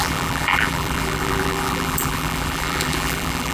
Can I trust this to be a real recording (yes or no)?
no